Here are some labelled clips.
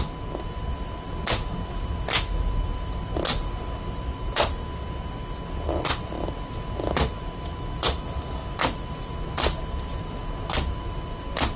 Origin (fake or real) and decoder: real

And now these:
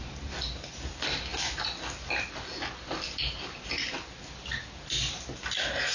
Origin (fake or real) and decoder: real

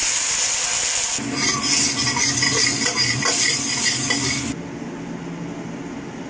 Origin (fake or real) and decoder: real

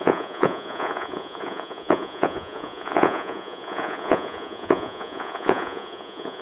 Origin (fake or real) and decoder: fake, vocoder, Vocos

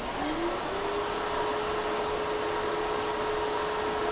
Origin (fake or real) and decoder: real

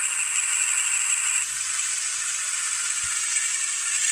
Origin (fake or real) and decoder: real